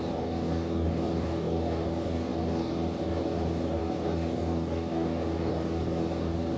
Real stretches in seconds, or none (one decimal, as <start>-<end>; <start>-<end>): none